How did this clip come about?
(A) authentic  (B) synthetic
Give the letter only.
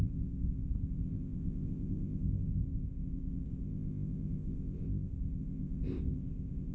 B